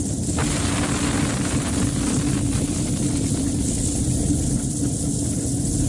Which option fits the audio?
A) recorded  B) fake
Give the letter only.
A